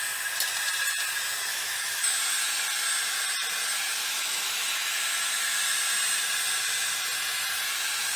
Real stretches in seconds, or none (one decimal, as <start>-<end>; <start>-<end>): 0.0-1.5; 2.2-4.0; 4.9-8.2